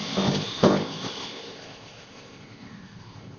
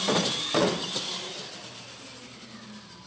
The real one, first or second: second